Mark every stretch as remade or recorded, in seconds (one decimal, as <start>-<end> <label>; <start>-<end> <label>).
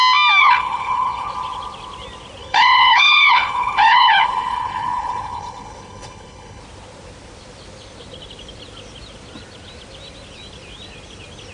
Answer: 0.0-0.4 recorded; 0.4-1.3 remade; 1.3-2.4 recorded; 2.4-6.6 remade; 6.6-11.5 recorded